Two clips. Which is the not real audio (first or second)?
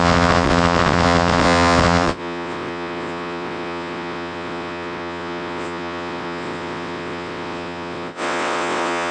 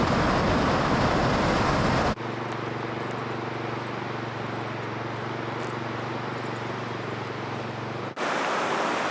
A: first